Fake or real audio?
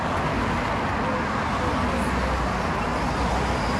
real